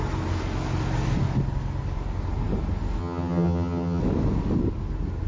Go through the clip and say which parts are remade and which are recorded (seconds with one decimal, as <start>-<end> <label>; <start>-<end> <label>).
0.0-3.0 recorded; 3.0-4.0 remade; 4.0-5.3 recorded